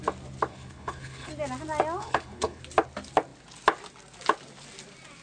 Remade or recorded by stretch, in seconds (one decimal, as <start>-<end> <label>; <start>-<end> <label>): 0.0-0.5 recorded; 0.5-1.3 remade; 1.3-2.0 recorded; 2.0-2.6 remade; 2.6-5.2 recorded

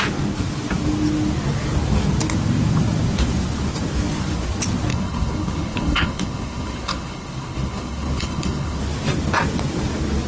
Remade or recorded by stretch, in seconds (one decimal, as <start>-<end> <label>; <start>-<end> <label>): 0.0-4.9 recorded; 4.9-8.8 remade; 8.8-10.3 recorded